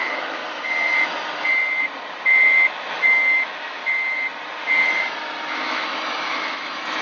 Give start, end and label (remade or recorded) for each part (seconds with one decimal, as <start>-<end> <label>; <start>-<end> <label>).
0.0-0.4 remade; 0.4-2.9 recorded; 2.9-3.8 remade; 3.8-5.5 recorded; 5.5-7.0 remade